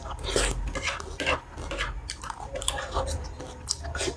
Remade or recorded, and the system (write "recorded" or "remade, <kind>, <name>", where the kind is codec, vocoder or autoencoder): recorded